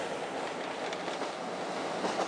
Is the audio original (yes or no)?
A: yes